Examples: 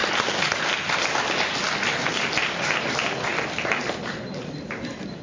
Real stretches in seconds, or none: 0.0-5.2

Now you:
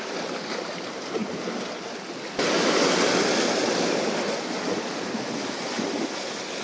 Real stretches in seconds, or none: 0.0-6.6

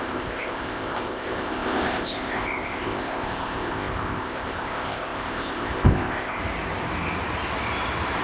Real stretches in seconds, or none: 6.4-8.2